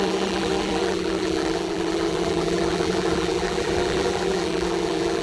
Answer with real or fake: fake